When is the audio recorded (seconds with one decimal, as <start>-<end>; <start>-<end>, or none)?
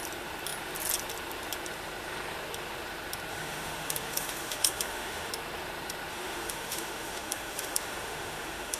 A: 0.0-3.3; 5.3-6.1